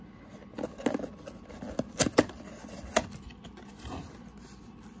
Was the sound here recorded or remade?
recorded